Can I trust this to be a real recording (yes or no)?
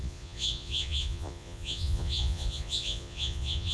no